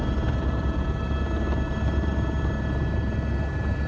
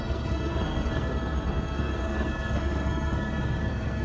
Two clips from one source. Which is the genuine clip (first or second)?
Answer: first